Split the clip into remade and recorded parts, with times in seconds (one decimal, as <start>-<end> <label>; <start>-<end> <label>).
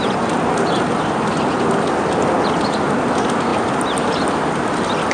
0.0-5.1 recorded